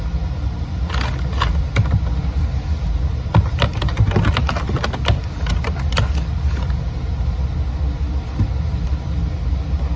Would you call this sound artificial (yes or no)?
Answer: no